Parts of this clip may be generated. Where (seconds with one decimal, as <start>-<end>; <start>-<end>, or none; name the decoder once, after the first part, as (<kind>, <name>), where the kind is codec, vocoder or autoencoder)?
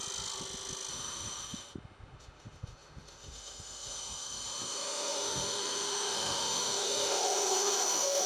0.9-8.3 (autoencoder, DAC-VAE)